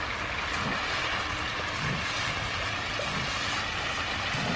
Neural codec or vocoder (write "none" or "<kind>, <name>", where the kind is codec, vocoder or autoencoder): none